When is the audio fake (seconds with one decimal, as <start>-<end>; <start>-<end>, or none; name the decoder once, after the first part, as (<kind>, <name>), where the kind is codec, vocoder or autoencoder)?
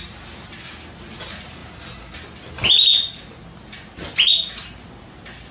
none